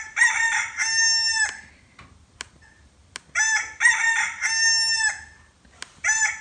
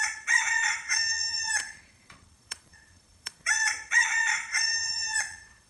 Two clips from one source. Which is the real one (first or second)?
first